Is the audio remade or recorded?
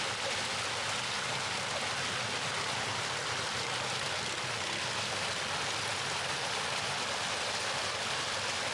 recorded